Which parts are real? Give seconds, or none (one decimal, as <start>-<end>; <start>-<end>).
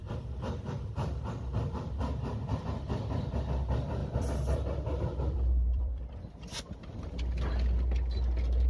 1.9-4.0; 6.3-8.7